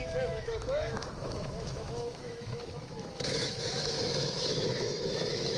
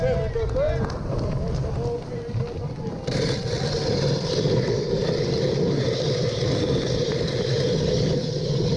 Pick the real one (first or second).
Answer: second